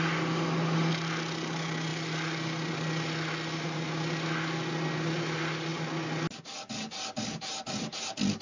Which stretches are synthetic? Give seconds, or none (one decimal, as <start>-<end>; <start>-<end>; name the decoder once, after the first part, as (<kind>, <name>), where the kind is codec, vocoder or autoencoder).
none